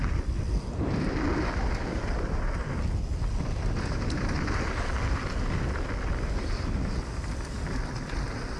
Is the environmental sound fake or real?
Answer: real